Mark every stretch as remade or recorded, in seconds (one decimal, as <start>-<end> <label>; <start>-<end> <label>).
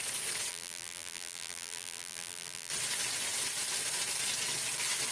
0.0-0.5 recorded; 0.5-2.7 remade; 2.7-5.1 recorded